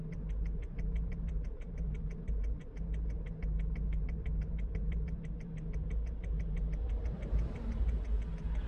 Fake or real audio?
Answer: fake